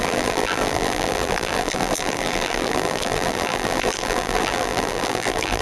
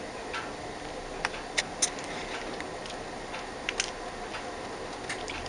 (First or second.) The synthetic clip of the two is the first